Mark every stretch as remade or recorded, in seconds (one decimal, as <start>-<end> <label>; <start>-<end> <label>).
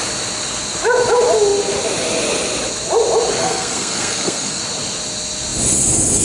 0.0-3.4 recorded; 3.4-4.6 remade; 4.6-6.2 recorded